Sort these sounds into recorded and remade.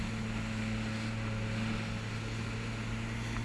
recorded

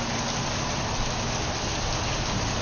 recorded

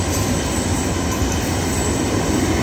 recorded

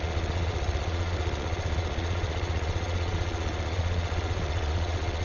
remade